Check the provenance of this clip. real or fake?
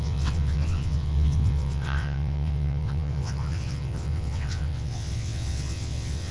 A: fake